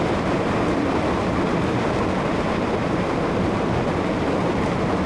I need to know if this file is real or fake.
real